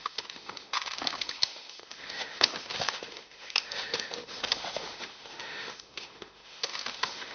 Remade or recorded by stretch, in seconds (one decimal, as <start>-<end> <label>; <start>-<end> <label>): 0.0-7.3 remade